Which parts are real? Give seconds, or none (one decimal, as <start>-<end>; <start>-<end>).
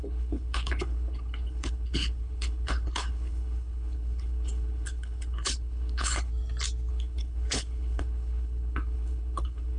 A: 6.3-6.9